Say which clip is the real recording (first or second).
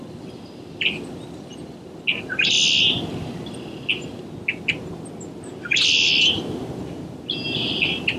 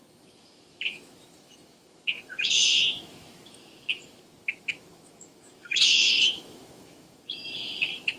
first